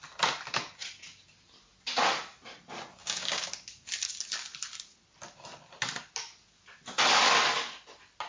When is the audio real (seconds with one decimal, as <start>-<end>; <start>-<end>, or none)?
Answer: 0.0-3.0; 3.5-8.3